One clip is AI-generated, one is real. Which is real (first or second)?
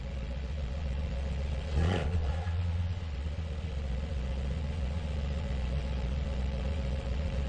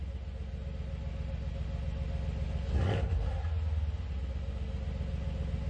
second